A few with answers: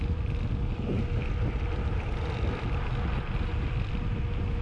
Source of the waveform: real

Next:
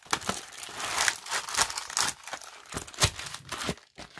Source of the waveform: real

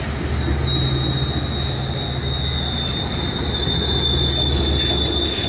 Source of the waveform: real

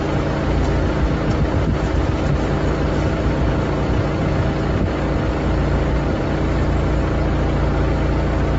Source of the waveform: real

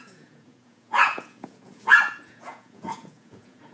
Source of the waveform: fake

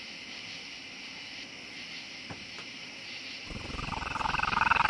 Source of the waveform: real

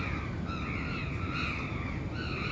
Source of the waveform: real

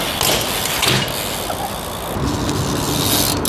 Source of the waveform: real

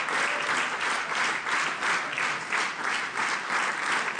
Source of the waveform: real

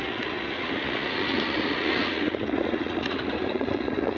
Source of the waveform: fake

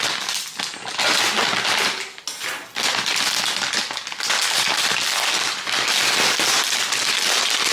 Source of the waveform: real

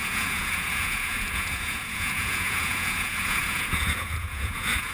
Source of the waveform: fake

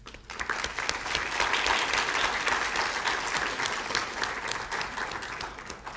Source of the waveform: real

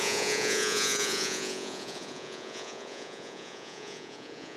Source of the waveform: fake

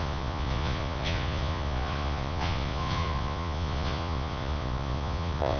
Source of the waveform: fake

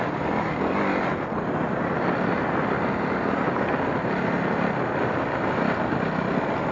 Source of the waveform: real